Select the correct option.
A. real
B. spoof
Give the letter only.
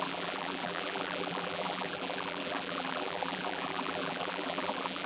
B